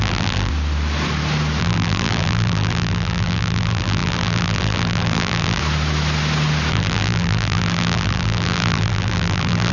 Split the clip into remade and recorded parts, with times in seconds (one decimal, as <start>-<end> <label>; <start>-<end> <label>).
0.0-0.5 remade; 0.5-1.6 recorded; 1.6-5.6 remade; 5.6-6.7 recorded; 6.7-9.7 remade